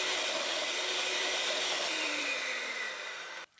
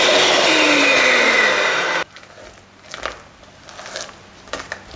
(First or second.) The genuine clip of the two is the second